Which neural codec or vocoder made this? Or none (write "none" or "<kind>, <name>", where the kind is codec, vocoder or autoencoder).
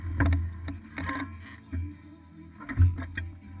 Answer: none